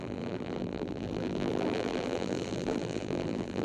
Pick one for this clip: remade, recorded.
remade